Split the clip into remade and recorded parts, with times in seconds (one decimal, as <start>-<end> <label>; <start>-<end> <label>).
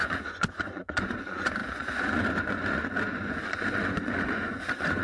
0.0-5.0 remade